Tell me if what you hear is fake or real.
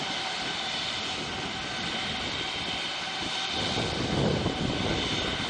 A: real